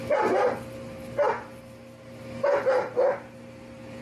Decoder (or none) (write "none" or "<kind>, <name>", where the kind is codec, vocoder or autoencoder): none